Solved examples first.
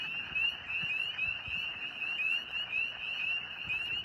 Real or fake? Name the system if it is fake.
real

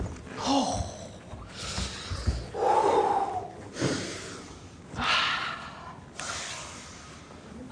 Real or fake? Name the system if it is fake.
real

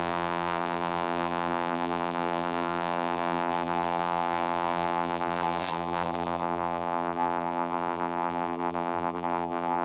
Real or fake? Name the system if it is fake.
fake, vocoder, BigVGAN v2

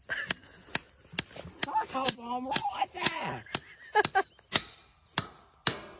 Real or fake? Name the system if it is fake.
real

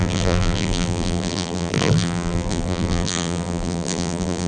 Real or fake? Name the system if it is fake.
fake, vocoder, BigVGAN v2